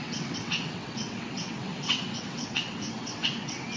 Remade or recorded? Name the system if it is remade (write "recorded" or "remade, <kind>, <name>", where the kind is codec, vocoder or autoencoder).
remade, vocoder, WaveNeXt